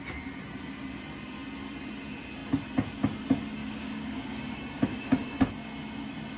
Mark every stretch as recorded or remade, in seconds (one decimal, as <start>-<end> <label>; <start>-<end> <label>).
0.0-3.6 recorded; 3.6-5.4 remade; 5.4-6.4 recorded